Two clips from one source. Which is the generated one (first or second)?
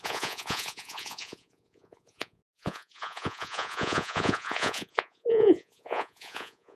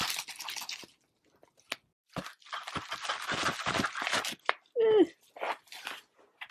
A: first